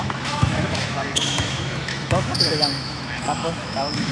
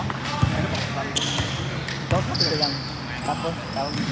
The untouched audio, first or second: second